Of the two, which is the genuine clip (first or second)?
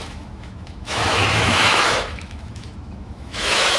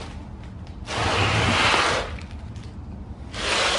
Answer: second